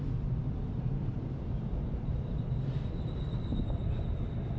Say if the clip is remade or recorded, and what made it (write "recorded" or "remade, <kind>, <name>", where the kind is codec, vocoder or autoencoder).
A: recorded